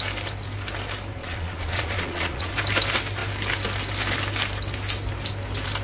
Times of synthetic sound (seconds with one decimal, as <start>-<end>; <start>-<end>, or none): 1.2-2.5